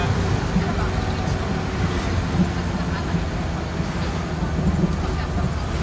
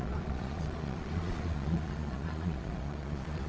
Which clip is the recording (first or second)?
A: first